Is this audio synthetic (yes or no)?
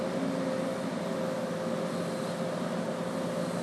no